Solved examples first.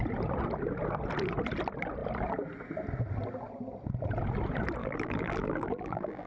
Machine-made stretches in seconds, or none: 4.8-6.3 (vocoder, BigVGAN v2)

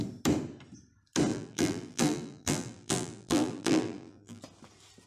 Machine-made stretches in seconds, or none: 1.3-4.4 (vocoder, BigVGAN v2)